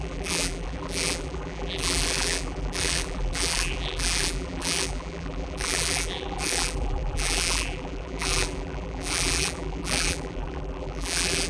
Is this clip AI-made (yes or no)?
yes